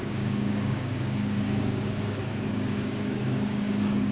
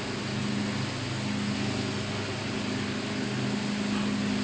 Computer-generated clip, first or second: first